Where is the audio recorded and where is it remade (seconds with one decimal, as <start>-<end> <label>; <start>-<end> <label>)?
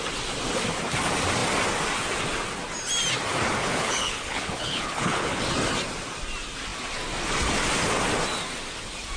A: 0.0-3.6 recorded; 3.6-5.4 remade; 5.4-9.2 recorded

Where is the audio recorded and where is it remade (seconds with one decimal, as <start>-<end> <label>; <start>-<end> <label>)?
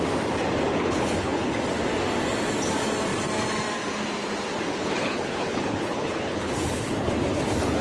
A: 0.0-0.7 recorded; 0.7-1.6 remade; 1.6-4.7 recorded; 4.7-7.1 remade; 7.1-7.8 recorded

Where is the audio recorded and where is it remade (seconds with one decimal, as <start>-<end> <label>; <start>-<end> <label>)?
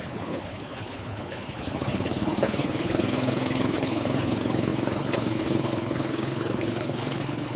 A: 0.0-7.6 remade